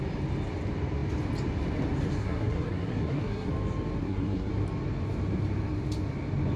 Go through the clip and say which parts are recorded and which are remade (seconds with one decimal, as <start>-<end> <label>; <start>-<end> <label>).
0.0-2.2 recorded; 2.2-3.5 remade; 3.5-4.0 recorded; 4.0-4.5 remade; 4.5-6.6 recorded